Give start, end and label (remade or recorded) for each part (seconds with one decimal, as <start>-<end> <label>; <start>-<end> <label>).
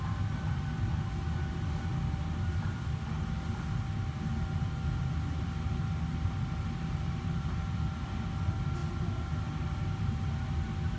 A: 0.0-11.0 recorded